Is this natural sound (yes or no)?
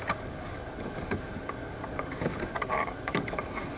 no